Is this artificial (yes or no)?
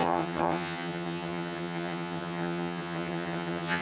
yes